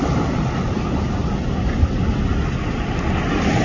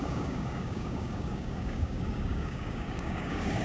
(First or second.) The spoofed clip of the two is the second